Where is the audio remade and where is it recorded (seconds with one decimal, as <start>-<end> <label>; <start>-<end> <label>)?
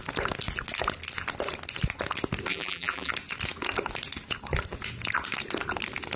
0.0-2.5 recorded; 2.5-3.1 remade; 3.1-6.2 recorded